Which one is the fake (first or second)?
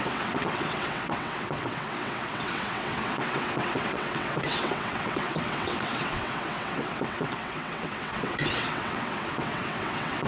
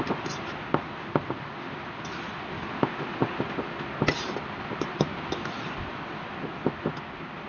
first